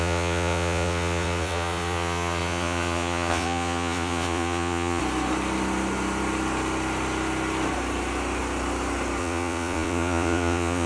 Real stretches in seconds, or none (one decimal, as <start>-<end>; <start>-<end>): 5.0-9.2

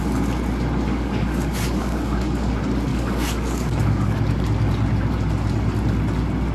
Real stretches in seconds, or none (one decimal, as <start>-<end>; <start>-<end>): 0.0-0.9; 2.5-2.9; 4.2-6.5